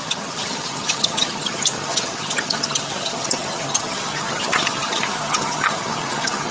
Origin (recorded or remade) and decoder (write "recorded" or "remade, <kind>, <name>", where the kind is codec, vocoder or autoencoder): remade, vocoder, HiFi-GAN